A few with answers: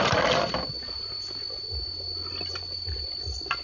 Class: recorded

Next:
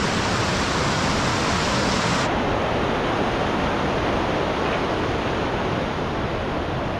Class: recorded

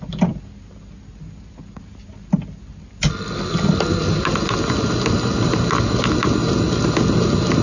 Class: recorded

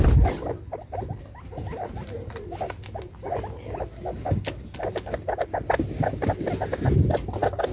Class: recorded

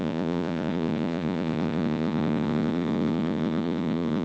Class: remade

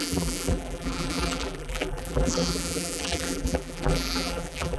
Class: remade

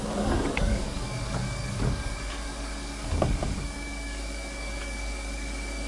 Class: remade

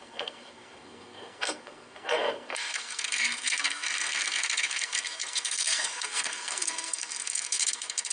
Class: remade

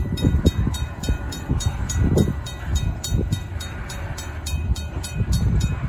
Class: remade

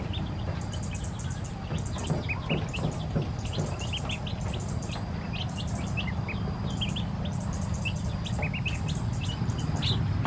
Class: recorded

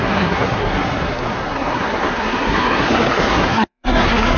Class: remade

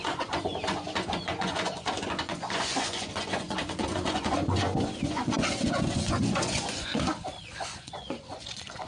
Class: remade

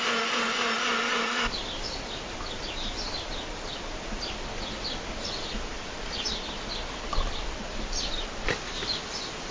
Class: recorded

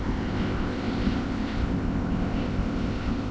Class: remade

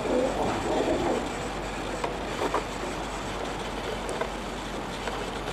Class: recorded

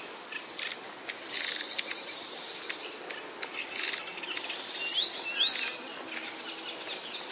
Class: recorded